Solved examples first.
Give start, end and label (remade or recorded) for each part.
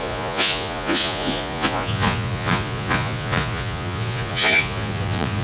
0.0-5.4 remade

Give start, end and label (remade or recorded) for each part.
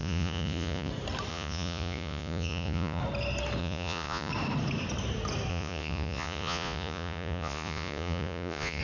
0.0-0.9 remade; 0.9-1.3 recorded; 1.3-3.0 remade; 3.0-3.6 recorded; 3.6-4.3 remade; 4.3-5.5 recorded; 5.5-8.8 remade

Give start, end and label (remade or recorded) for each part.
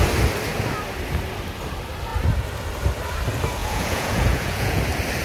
0.0-3.6 recorded; 3.6-4.8 remade; 4.8-5.2 recorded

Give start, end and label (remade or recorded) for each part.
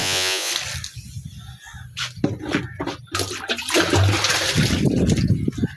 0.0-0.5 remade; 0.5-5.8 recorded